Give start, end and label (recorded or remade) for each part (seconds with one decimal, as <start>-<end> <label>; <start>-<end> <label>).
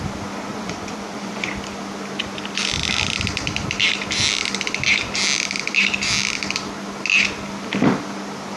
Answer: 0.0-0.5 recorded; 0.5-1.5 remade; 1.5-8.6 recorded